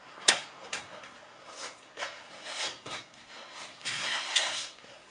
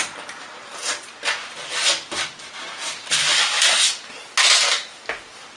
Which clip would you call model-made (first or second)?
first